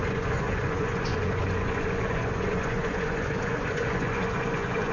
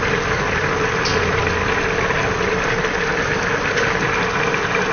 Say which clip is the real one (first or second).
second